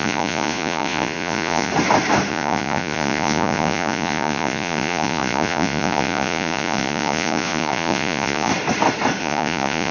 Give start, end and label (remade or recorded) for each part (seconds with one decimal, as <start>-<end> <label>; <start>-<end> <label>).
0.0-1.7 remade; 1.7-2.3 recorded; 2.3-8.5 remade; 8.5-9.2 recorded; 9.2-9.9 remade